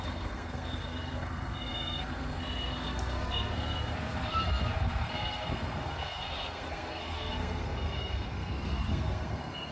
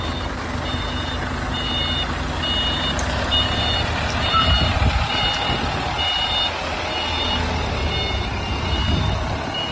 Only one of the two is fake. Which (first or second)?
first